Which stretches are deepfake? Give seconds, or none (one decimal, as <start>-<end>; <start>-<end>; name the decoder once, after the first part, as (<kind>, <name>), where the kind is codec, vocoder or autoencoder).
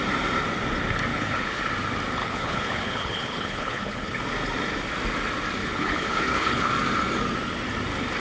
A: 1.1-1.6 (codec, HILCodec); 2.2-4.2; 5.6-6.7